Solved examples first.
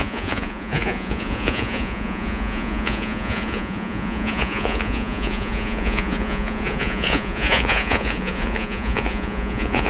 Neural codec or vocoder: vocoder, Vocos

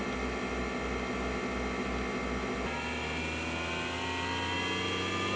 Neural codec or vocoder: none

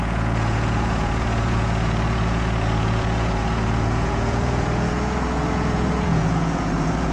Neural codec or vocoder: vocoder, Vocos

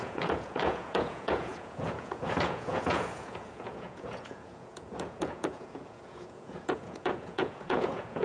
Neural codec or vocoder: vocoder, Vocos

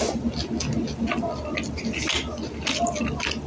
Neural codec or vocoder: none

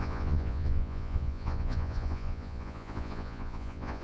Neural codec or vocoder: vocoder, Vocos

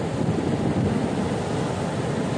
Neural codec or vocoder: none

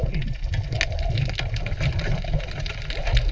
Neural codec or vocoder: none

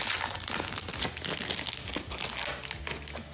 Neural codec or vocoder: none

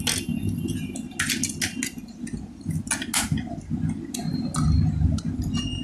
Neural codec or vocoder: none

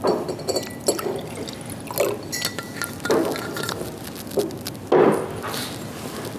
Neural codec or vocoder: none